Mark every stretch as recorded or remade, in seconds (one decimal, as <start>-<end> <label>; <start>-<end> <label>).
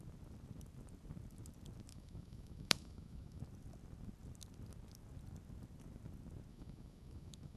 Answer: 0.0-1.9 recorded; 1.9-3.4 remade; 3.4-6.5 recorded; 6.5-7.6 remade